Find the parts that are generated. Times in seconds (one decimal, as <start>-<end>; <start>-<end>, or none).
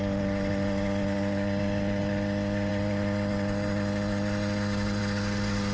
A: none